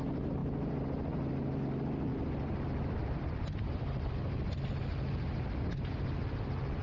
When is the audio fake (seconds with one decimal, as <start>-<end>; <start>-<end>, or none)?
none